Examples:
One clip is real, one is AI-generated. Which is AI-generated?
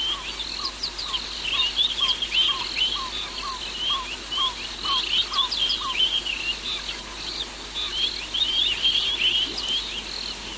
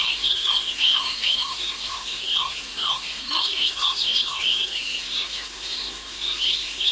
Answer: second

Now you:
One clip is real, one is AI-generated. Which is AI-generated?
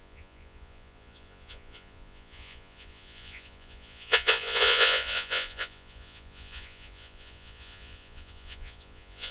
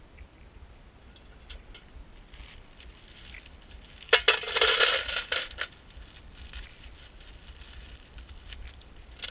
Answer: first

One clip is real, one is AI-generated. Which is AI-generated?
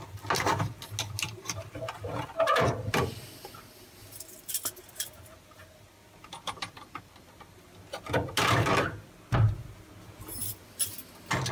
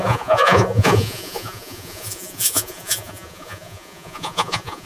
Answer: second